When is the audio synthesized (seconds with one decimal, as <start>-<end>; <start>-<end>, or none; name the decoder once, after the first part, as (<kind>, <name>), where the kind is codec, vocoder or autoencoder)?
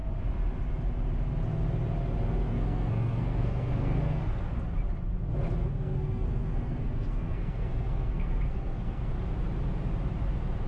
2.5-4.2 (codec, SNAC); 5.6-9.1